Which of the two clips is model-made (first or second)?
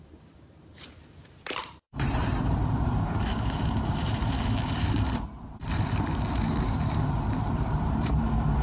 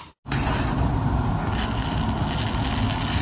first